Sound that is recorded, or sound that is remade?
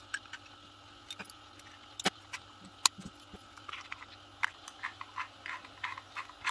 recorded